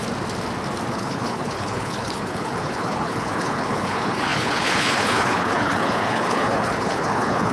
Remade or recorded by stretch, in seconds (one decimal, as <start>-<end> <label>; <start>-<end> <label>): 0.0-0.9 recorded; 0.9-7.5 remade